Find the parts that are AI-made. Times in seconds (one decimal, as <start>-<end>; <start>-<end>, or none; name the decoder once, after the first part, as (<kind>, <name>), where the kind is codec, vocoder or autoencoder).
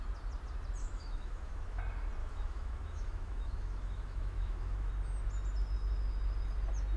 0.8-1.8 (autoencoder, DAC-VAE); 2.2-4.9